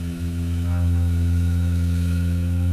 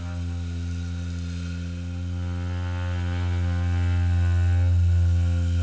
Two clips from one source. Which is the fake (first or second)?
first